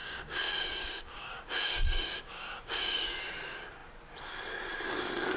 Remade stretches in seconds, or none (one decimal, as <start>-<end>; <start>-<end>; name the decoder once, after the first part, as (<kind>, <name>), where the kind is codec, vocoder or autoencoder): 0.0-3.2 (codec, DAC)